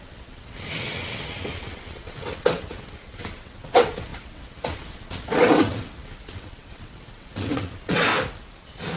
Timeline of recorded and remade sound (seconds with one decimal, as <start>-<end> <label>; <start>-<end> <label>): 0.0-8.1 remade; 8.1-9.0 recorded

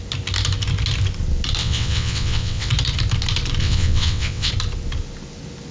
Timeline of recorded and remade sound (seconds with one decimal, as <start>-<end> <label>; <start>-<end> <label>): 0.0-1.6 recorded; 1.6-2.7 remade; 2.7-3.6 recorded; 3.6-4.5 remade; 4.5-5.7 recorded

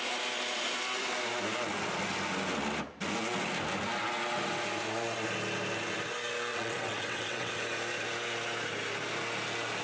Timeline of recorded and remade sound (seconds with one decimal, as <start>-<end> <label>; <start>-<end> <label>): 0.0-6.5 recorded; 6.5-7.5 remade; 7.5-9.8 recorded

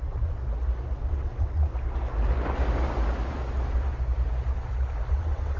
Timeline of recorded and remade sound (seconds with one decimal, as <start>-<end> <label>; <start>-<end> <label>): 0.0-0.4 remade; 0.4-1.0 recorded; 1.0-1.7 remade; 1.7-5.1 recorded; 5.1-5.6 remade

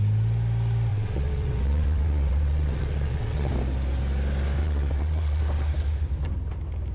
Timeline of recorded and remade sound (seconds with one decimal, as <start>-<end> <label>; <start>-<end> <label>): 0.0-0.9 recorded; 0.9-3.5 remade; 3.5-4.6 recorded; 4.6-5.4 remade; 5.4-6.9 recorded

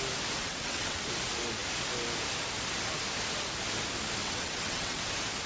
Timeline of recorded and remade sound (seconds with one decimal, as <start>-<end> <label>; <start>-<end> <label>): 0.0-0.4 recorded; 0.4-1.0 remade; 1.0-4.2 recorded; 4.2-5.0 remade; 5.0-5.5 recorded